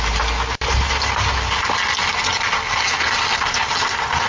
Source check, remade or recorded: recorded